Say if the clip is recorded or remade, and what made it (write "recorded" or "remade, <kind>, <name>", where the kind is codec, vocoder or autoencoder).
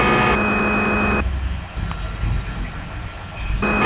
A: recorded